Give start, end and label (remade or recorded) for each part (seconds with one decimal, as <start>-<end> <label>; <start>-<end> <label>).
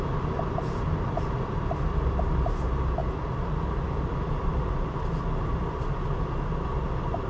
0.0-3.0 recorded; 3.0-5.1 remade; 5.1-7.3 recorded